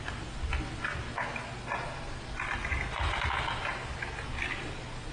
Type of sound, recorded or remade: recorded